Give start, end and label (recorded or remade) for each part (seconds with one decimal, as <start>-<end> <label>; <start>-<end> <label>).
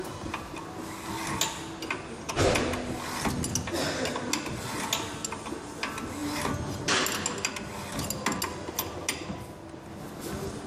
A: 0.0-10.7 recorded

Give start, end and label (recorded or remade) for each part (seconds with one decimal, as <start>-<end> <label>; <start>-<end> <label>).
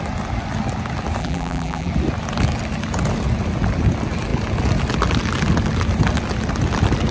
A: 0.0-1.2 recorded; 1.2-1.9 remade; 1.9-7.1 recorded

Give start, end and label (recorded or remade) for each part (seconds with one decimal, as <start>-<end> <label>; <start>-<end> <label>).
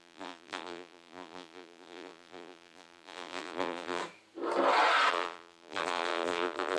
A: 0.0-4.0 remade; 4.0-5.1 recorded; 5.1-6.8 remade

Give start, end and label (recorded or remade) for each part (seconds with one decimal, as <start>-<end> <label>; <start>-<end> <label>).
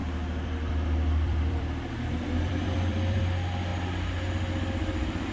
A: 0.0-3.2 remade; 3.2-5.3 recorded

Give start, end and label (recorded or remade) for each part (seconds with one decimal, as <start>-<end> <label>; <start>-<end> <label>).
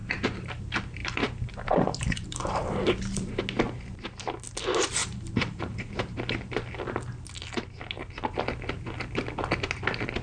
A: 0.0-0.6 remade; 0.6-1.0 recorded; 1.0-3.4 remade; 3.4-5.0 recorded; 5.0-6.2 remade; 6.2-10.2 recorded